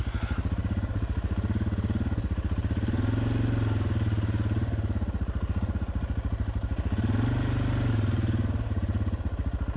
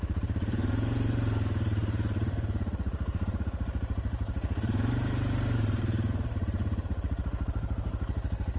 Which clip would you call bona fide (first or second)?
first